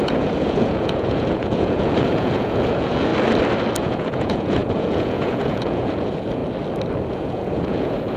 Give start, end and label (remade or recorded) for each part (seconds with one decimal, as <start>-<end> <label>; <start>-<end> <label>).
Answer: 0.0-3.1 remade; 3.1-3.8 recorded; 3.8-6.4 remade; 6.4-7.1 recorded; 7.1-8.2 remade